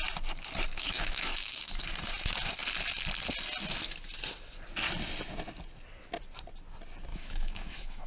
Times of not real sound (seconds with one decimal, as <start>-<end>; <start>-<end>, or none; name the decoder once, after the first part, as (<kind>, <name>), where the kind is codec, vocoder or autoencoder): 0.7-1.9 (autoencoder, DAC-VAE); 7.1-8.1